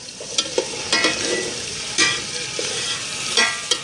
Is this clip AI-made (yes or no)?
yes